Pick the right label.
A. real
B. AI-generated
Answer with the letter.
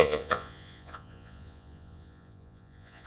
B